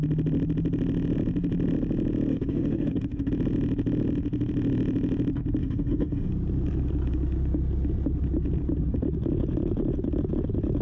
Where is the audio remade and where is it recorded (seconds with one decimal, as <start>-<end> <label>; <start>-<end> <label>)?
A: 0.0-2.3 recorded; 2.3-3.3 remade; 3.3-5.6 recorded; 5.6-6.3 remade; 6.3-10.8 recorded